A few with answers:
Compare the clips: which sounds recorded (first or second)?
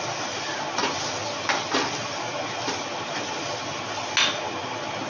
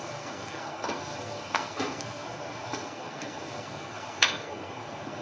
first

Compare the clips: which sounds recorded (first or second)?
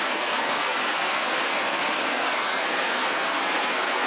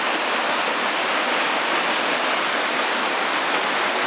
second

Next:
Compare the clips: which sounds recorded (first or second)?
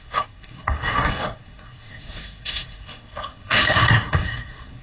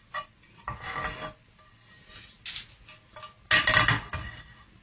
second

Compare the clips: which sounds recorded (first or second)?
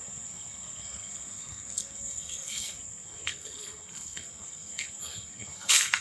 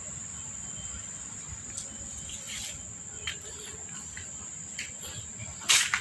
second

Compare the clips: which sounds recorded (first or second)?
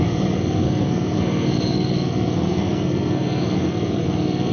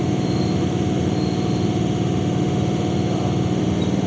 second